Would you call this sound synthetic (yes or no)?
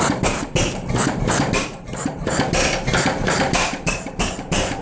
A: yes